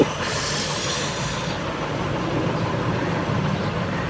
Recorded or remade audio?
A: recorded